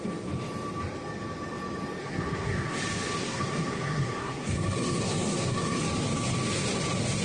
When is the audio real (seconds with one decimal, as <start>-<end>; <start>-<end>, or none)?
0.0-2.0; 2.8-3.2; 5.8-7.2